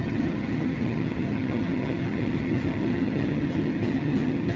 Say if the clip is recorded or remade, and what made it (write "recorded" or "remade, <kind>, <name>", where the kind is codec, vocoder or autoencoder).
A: remade, vocoder, HiFi-GAN